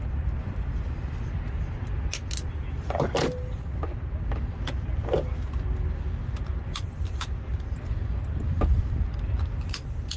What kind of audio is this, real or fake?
real